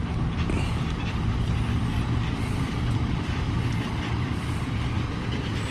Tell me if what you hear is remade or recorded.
recorded